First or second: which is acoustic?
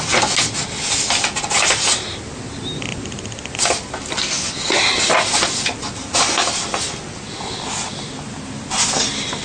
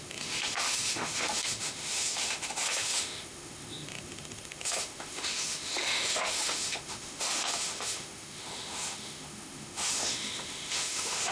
first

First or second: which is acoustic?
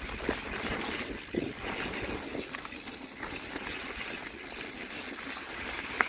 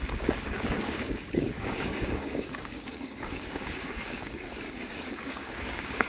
first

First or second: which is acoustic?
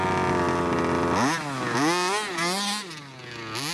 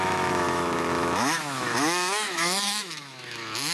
first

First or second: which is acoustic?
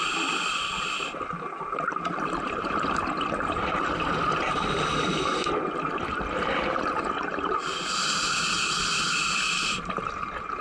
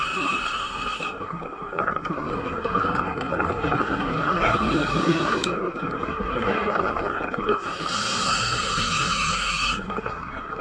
first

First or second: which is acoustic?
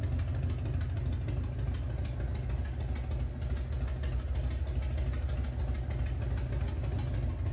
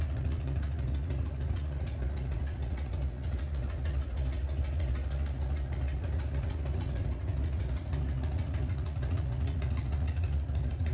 first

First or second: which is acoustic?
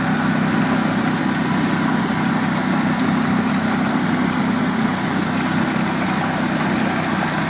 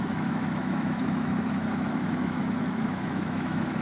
first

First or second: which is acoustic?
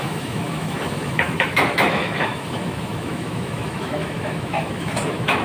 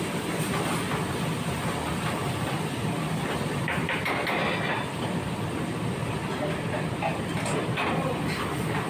second